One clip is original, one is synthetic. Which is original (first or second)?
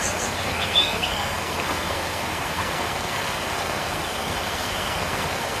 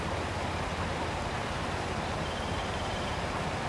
second